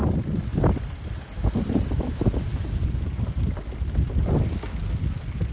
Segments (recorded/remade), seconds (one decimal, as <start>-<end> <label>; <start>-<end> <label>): 0.0-5.5 recorded